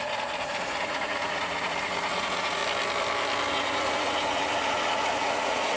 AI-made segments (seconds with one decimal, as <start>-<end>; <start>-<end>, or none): 0.0-2.6; 3.5-5.8